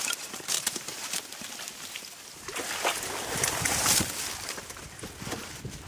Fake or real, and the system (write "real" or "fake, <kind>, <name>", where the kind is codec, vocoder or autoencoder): real